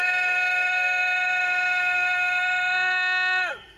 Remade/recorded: remade